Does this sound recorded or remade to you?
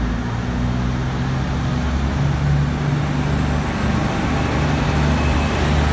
recorded